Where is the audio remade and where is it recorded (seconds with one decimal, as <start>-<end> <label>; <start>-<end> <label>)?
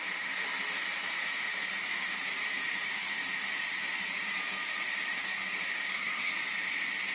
0.0-5.7 recorded; 5.7-6.3 remade; 6.3-7.1 recorded